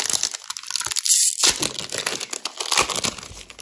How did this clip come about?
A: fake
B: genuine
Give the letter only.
B